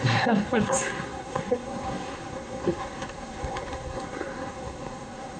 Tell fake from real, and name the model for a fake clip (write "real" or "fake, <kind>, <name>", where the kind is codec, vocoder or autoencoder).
fake, codec, SNAC